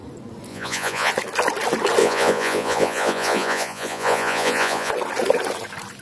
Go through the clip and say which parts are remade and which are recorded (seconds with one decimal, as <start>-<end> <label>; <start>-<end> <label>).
0.0-0.5 recorded; 0.5-1.1 remade; 1.1-2.0 recorded; 2.0-4.9 remade; 4.9-6.0 recorded